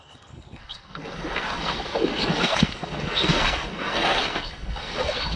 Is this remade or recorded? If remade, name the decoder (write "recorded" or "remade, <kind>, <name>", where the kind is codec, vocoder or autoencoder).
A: remade, codec, SNAC